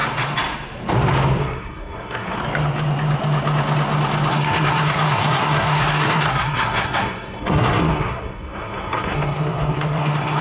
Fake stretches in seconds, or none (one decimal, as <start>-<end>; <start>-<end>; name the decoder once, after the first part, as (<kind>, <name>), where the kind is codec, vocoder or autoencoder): 1.4-2.4 (codec, SNAC); 4.3-10.4